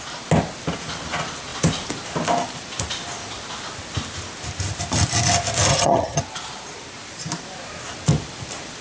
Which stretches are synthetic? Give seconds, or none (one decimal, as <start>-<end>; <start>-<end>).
5.7-6.2